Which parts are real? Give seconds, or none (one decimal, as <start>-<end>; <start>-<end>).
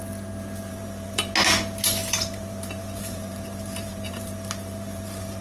0.0-0.7; 1.3-2.0